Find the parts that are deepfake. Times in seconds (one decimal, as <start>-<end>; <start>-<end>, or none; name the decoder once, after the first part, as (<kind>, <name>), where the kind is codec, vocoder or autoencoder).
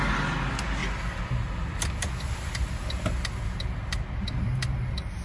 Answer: none